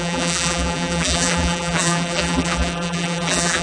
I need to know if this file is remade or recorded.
remade